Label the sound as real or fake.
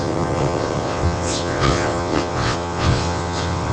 fake